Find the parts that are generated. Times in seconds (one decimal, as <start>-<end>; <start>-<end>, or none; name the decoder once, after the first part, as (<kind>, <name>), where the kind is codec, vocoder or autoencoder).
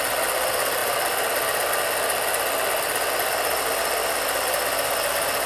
none